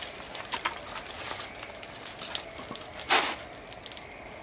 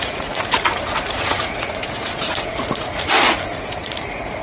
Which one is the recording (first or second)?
first